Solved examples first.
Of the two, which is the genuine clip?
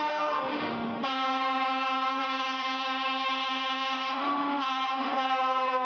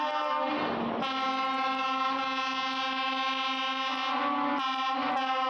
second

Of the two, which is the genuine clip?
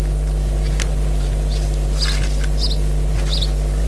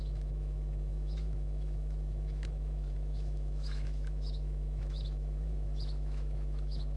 first